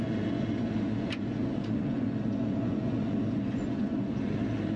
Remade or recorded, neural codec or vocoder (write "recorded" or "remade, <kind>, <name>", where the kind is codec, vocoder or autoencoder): remade, vocoder, Vocos